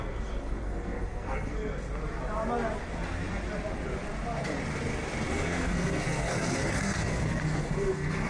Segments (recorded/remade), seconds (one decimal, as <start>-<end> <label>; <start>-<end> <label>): 0.0-1.7 remade; 1.7-5.3 recorded; 5.3-8.3 remade